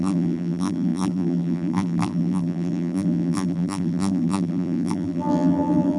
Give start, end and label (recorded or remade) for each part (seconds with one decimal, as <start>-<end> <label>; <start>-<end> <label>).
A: 0.0-6.0 remade